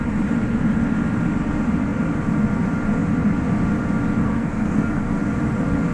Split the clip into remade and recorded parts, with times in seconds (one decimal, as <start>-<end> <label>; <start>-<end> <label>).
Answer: 0.0-4.2 recorded; 4.2-5.2 remade; 5.2-5.9 recorded